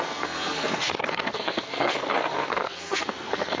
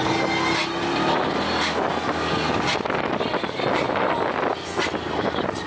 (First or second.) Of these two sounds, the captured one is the second